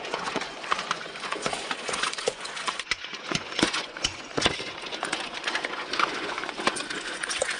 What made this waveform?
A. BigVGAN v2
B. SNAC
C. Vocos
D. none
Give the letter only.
C